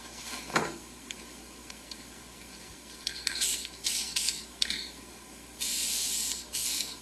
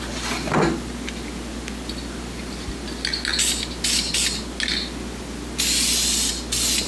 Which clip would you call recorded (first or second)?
second